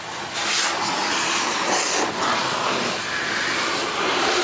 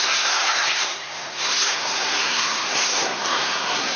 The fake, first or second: second